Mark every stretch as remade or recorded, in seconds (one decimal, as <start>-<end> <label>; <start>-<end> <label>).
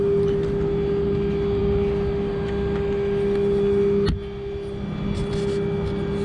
0.0-6.2 recorded